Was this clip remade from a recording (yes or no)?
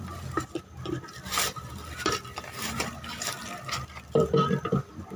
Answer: yes